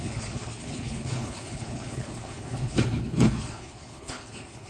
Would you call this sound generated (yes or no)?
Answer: yes